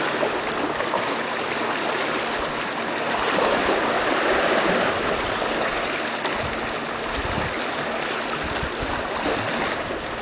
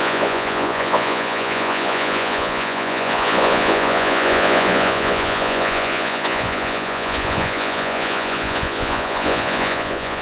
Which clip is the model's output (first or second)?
second